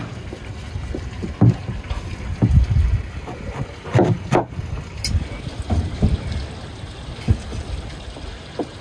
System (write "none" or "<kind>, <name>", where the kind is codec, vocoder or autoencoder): none